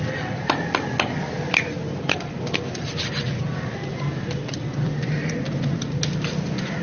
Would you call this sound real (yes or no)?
yes